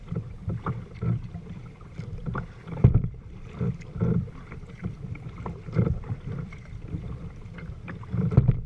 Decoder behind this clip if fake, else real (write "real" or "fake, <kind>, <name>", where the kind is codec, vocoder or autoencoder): fake, vocoder, BigVGAN v2